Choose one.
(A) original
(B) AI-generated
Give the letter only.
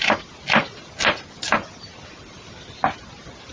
A